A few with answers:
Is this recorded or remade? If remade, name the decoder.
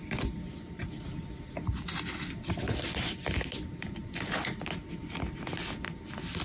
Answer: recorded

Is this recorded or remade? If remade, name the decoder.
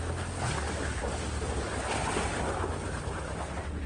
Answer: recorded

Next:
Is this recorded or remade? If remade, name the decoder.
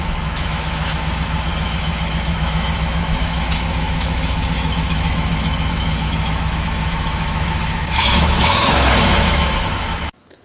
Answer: remade, autoencoder, DAC-VAE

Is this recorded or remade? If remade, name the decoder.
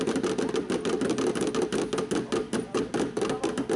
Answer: recorded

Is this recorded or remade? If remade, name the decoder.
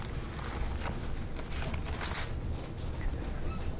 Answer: recorded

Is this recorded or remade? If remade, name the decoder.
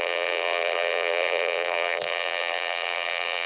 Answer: remade, vocoder, BigVGAN v2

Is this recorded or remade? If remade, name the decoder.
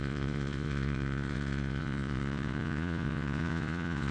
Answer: remade, vocoder, Vocos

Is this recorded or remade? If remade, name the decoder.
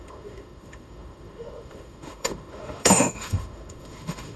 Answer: remade, autoencoder, DAC-VAE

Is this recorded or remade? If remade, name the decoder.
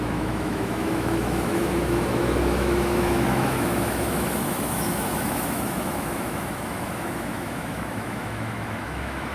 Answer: remade, autoencoder, DAC-VAE